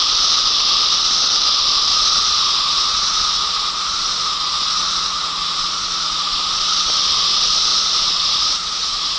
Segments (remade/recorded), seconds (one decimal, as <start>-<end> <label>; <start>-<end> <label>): 0.0-1.9 recorded; 1.9-6.4 remade; 6.4-7.7 recorded; 7.7-9.2 remade